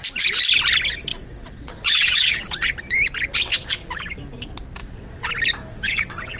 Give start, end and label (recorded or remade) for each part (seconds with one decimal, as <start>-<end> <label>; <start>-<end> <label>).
0.0-1.1 recorded; 1.1-2.7 remade; 2.7-4.8 recorded; 4.8-5.3 remade; 5.3-5.7 recorded; 5.7-6.4 remade